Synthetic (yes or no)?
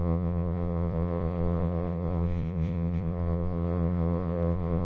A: yes